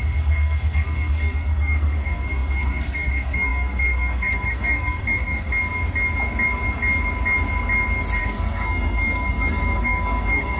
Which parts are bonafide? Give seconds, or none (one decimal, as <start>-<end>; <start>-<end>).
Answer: 5.5-8.2